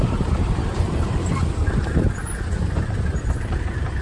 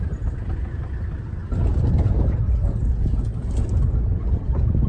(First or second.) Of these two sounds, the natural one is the second